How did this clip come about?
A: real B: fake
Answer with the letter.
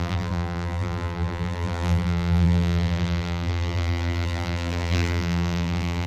B